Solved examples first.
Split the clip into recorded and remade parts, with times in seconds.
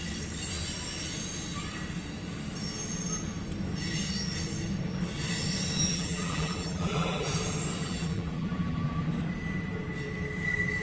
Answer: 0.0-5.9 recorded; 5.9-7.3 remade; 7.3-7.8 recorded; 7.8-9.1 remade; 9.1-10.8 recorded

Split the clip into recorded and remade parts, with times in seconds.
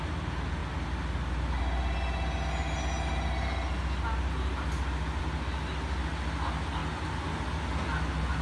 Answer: 0.0-8.4 recorded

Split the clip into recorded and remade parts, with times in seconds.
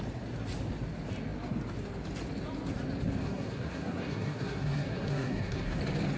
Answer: 0.0-3.2 recorded; 3.2-5.8 remade; 5.8-6.2 recorded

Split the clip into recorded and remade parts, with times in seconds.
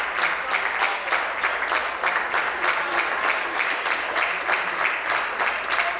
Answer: 0.0-6.0 recorded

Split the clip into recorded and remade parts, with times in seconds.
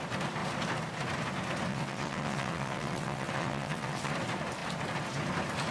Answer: 0.0-1.7 recorded; 1.7-4.1 remade; 4.1-5.7 recorded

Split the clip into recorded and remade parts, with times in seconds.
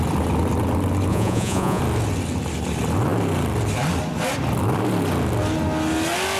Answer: 0.0-1.1 recorded; 1.1-1.8 remade; 1.8-6.4 recorded